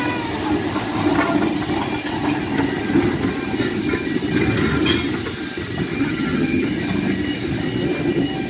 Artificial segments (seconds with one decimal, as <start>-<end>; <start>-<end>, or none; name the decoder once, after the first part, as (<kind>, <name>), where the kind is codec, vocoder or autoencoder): 5.9-6.7 (vocoder, HiFi-GAN)